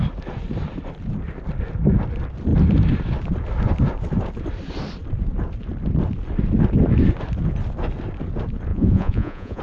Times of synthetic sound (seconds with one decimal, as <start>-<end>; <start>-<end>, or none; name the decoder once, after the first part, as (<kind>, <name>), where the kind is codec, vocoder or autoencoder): 8.7-9.6 (vocoder, Vocos)